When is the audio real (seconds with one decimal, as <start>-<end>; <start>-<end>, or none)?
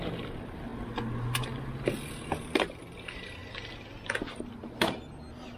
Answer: 0.0-5.6